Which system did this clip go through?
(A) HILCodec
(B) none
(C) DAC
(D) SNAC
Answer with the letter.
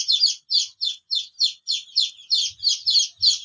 B